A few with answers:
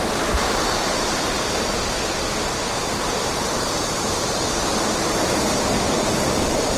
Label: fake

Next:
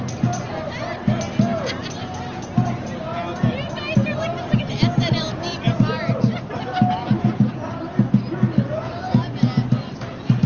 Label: real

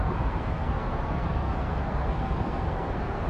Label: fake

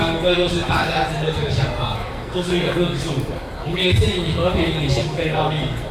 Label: fake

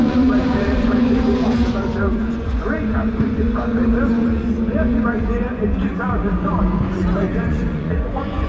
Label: fake